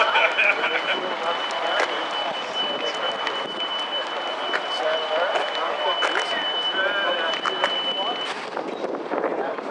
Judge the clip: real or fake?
fake